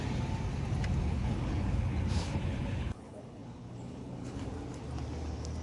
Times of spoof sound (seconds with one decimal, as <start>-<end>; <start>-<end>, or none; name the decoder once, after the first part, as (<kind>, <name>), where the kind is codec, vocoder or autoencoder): 1.0-4.4 (codec, HILCodec)